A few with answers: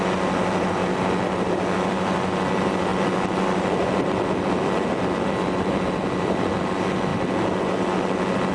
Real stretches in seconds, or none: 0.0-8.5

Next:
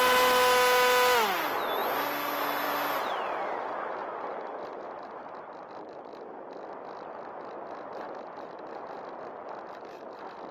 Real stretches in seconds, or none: 0.0-10.5

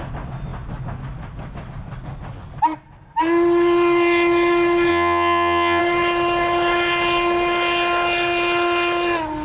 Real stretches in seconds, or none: 0.0-4.9; 5.8-9.4